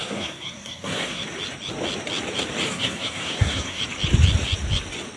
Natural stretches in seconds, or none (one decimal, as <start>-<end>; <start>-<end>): 1.2-2.7; 3.8-5.2